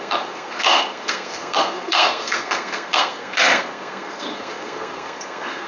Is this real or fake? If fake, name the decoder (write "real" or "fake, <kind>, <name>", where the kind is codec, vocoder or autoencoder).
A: fake, codec, SNAC